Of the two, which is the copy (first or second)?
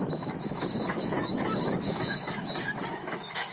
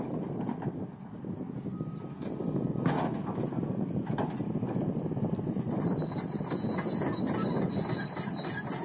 first